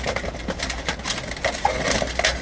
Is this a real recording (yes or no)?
yes